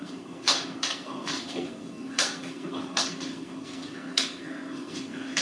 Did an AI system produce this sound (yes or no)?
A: yes